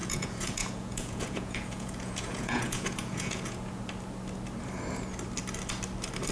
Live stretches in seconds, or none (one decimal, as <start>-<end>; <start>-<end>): 3.8-6.3